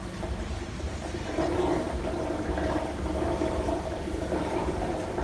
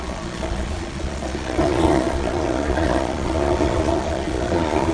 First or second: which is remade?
second